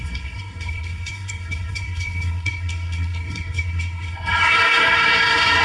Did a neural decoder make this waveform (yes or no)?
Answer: yes